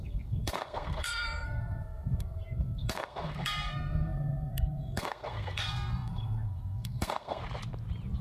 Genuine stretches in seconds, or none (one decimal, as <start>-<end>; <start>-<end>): 7.4-8.2